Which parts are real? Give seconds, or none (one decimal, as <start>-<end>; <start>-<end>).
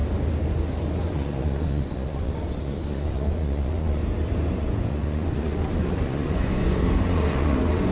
0.0-1.1; 4.0-4.6